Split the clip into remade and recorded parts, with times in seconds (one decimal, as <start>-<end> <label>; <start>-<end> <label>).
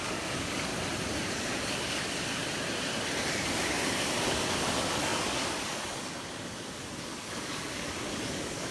0.0-0.7 remade; 0.7-1.3 recorded; 1.3-2.4 remade; 2.4-3.3 recorded; 3.3-8.7 remade